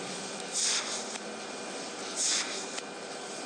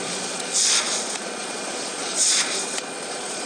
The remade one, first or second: second